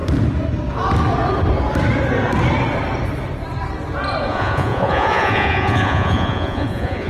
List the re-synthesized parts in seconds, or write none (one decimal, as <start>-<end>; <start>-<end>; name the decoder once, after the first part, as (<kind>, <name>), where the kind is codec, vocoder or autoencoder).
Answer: 4.3-7.1 (vocoder, Vocos)